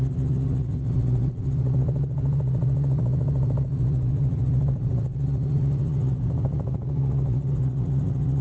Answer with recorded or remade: remade